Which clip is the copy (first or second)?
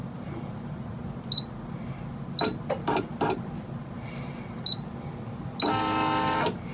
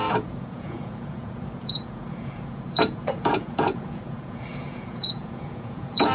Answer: second